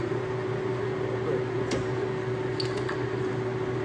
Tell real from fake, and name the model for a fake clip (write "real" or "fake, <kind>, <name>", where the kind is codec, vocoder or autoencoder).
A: real